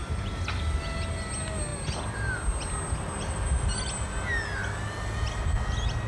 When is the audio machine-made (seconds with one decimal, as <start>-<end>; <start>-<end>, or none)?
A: 0.0-0.8